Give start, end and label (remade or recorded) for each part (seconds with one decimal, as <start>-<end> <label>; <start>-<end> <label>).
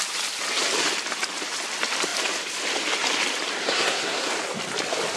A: 0.0-3.6 recorded; 3.6-4.3 remade; 4.3-5.2 recorded